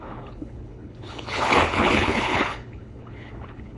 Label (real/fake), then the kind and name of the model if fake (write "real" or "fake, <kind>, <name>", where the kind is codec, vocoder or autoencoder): fake, codec, HILCodec